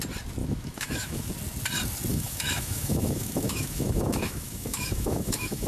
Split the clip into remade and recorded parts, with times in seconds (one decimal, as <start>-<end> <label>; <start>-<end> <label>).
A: 0.0-0.4 recorded; 0.4-1.3 remade; 1.3-2.1 recorded; 2.1-5.7 remade